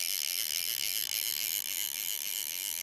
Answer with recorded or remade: recorded